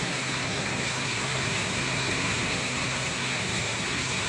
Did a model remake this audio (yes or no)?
yes